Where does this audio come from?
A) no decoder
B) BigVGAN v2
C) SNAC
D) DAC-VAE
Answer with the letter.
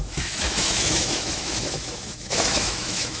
D